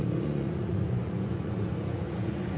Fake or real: fake